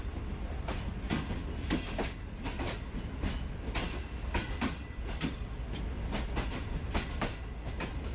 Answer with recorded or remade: recorded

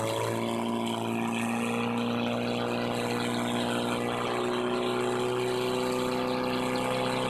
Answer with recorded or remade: recorded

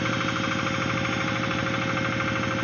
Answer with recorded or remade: recorded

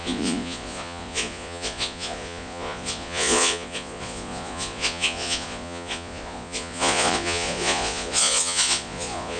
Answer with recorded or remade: remade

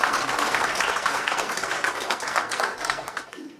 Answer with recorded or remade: remade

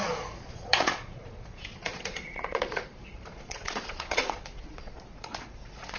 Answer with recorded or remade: remade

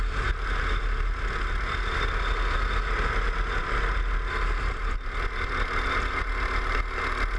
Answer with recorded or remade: recorded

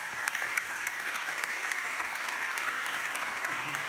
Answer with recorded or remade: remade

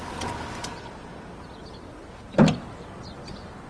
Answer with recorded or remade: recorded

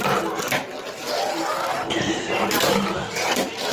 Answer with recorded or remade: recorded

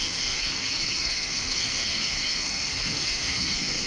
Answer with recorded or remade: remade